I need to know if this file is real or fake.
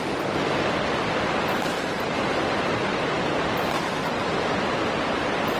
real